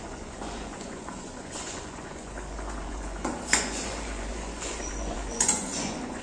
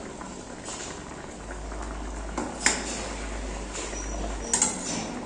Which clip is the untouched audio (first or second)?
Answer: second